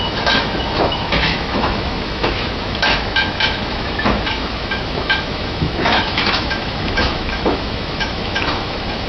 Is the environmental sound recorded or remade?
remade